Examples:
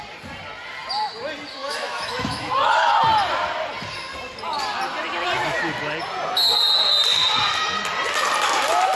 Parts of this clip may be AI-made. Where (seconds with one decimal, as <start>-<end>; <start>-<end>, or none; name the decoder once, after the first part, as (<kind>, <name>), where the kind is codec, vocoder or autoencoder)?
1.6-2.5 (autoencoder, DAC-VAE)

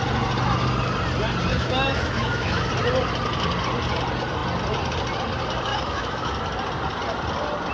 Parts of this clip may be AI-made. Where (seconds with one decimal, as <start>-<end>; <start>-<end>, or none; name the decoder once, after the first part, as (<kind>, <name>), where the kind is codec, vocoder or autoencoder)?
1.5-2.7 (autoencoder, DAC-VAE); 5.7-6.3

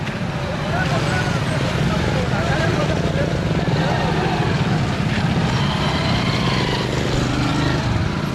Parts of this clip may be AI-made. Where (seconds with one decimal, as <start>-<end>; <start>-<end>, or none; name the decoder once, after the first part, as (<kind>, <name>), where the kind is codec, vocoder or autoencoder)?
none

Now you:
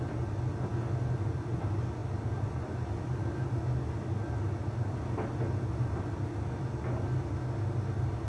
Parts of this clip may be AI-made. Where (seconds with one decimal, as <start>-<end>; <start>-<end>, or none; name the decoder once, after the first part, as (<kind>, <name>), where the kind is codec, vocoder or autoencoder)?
none

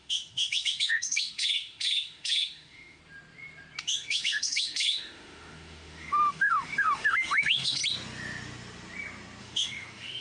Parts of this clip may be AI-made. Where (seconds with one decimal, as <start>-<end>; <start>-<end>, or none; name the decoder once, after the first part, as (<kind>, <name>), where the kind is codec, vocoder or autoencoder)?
0.0-3.0 (autoencoder, DAC-VAE); 3.8-7.8; 9.4-10.2